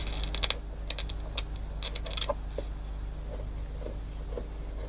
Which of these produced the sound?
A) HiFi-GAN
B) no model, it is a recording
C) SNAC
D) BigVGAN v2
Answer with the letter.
B